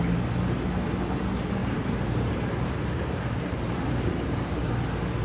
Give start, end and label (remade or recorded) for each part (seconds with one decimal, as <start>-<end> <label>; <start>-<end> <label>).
0.0-1.6 recorded; 1.6-4.7 remade; 4.7-5.2 recorded